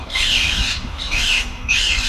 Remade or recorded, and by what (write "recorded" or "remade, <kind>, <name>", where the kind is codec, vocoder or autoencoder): remade, codec, DAC